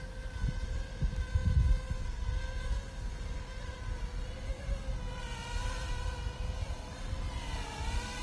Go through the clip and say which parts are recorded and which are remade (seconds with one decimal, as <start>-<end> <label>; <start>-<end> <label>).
0.0-8.2 recorded